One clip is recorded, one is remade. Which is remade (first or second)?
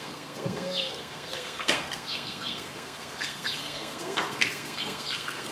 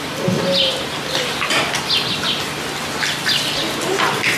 first